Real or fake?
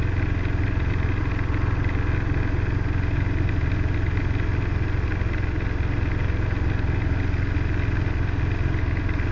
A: real